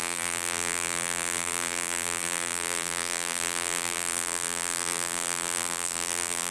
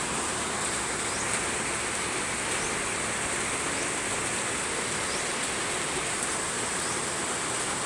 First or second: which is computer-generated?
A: first